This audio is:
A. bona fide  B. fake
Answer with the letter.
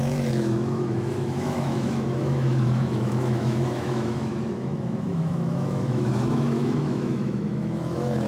B